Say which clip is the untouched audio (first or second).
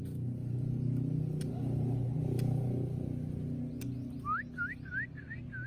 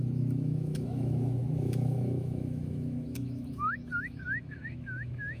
first